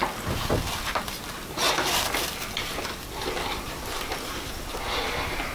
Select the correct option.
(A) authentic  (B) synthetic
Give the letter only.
A